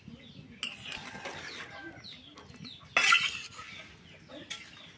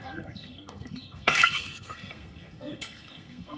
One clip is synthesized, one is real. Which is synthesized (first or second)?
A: second